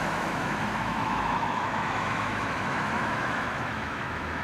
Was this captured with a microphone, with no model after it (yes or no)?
no